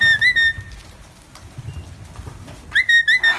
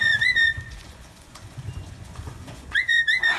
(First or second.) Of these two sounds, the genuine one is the first